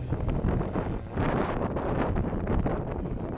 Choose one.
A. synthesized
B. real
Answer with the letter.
B